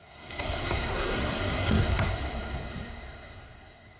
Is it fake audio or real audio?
fake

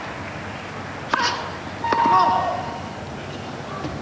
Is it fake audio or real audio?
real